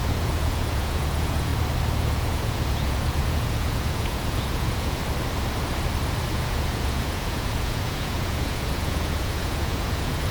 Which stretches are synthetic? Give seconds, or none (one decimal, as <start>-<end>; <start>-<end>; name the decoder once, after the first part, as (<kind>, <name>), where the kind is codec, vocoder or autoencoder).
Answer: 0.0-1.5 (vocoder, Vocos); 2.0-5.0; 6.3-10.3